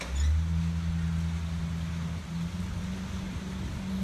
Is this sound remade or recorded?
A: recorded